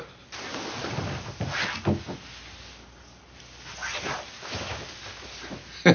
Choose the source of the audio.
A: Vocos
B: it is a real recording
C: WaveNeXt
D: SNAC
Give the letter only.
B